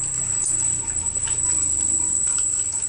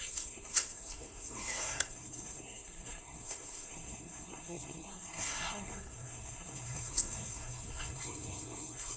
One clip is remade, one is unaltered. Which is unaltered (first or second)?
first